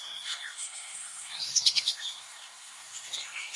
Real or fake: fake